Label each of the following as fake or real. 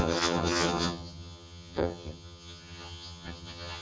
fake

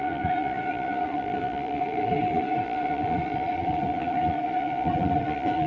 fake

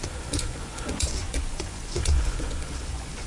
fake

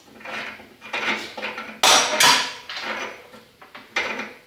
real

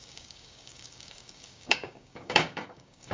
fake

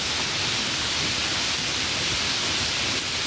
real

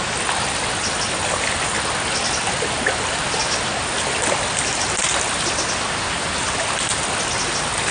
real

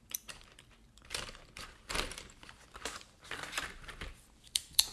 fake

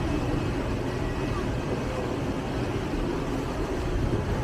real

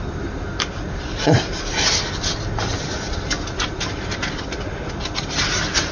real